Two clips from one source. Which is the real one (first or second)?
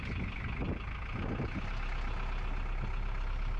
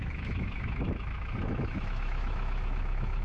first